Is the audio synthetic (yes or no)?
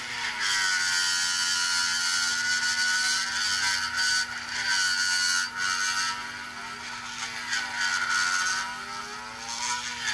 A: no